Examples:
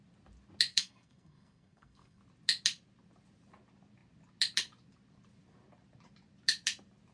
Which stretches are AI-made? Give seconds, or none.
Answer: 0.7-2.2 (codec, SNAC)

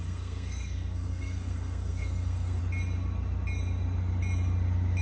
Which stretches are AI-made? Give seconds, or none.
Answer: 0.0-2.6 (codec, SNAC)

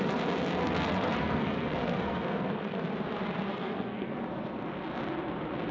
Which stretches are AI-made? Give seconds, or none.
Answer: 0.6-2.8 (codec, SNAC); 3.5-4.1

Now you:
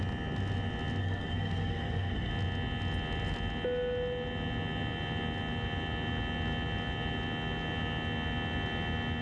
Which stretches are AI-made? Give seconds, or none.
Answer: 1.0-2.3 (codec, SNAC)

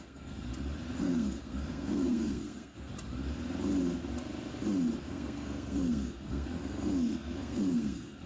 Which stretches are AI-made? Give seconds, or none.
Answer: 0.0-0.5 (codec, SNAC); 1.0-2.9; 5.0-8.3

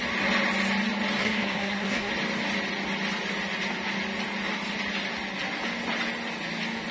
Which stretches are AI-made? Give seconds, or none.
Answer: 1.2-2.1 (codec, SNAC)

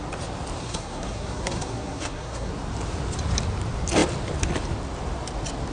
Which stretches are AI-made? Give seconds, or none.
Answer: 0.6-2.5 (codec, SNAC)

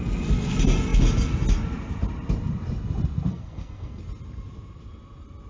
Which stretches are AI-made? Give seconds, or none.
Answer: 3.3-4.0 (codec, SNAC)